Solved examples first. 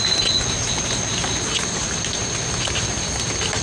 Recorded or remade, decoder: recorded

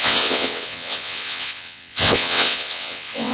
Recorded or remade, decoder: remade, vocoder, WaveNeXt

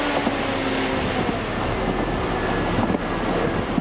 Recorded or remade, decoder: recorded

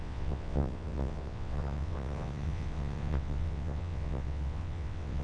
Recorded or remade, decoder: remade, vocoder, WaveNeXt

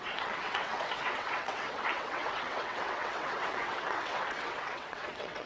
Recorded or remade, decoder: remade, vocoder, WaveNeXt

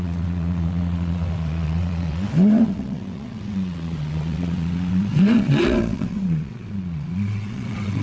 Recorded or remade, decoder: remade, vocoder, WaveNeXt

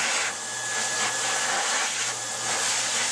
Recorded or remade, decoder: recorded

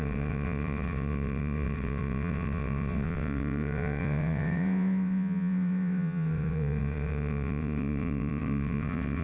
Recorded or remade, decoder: remade, vocoder, WaveNeXt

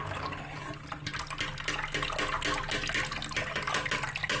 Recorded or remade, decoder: recorded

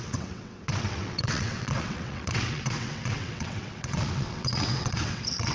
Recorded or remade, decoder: remade, vocoder, WaveNeXt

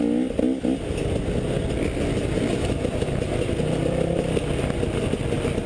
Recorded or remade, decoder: recorded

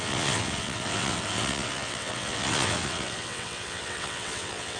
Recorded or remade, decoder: remade, vocoder, WaveNeXt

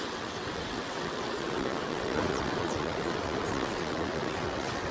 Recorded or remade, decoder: remade, vocoder, WaveNeXt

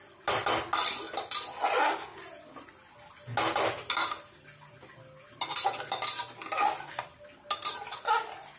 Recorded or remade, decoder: recorded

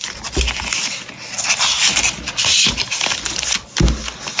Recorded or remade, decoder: recorded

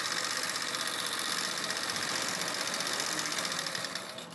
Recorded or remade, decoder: recorded